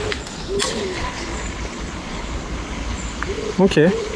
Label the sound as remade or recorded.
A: recorded